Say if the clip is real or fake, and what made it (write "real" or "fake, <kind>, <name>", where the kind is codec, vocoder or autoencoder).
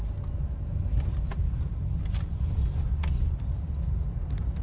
real